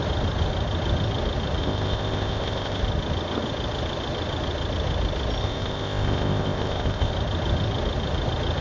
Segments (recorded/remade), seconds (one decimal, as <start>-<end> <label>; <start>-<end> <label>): 0.0-1.6 recorded; 1.6-2.8 remade; 2.8-5.4 recorded; 5.4-7.1 remade; 7.1-8.6 recorded

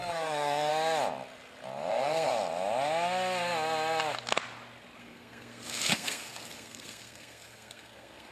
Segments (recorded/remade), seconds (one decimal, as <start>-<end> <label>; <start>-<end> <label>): 0.0-0.7 remade; 0.7-1.9 recorded; 1.9-2.3 remade; 2.3-5.0 recorded; 5.0-8.3 remade

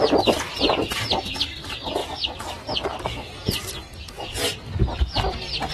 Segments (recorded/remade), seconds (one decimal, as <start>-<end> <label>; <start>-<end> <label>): 0.0-5.7 recorded